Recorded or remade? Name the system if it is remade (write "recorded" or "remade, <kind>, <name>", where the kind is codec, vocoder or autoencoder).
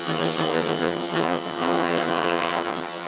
remade, vocoder, HiFi-GAN